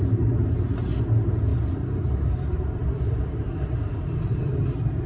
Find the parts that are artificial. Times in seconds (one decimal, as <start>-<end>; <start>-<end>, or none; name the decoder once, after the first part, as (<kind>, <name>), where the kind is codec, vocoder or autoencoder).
1.5-4.6 (vocoder, BigVGAN v2)